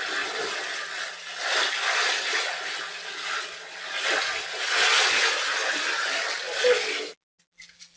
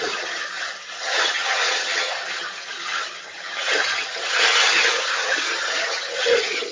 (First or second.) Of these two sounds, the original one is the first